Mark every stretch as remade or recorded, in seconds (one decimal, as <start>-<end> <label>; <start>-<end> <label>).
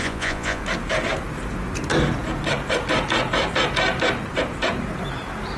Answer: 0.0-0.6 remade; 0.6-5.6 recorded